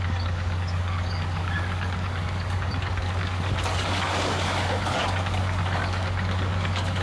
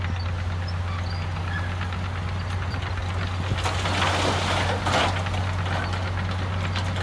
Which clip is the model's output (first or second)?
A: first